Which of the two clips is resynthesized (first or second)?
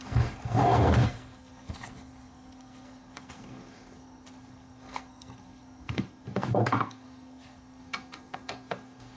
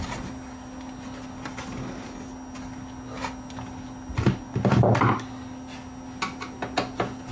first